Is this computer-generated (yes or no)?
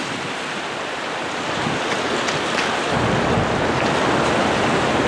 no